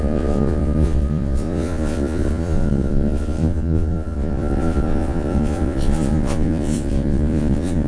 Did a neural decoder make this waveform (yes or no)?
yes